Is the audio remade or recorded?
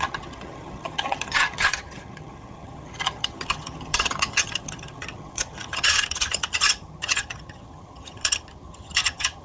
remade